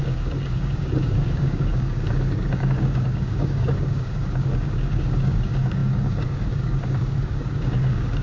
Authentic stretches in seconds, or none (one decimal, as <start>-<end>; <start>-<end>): none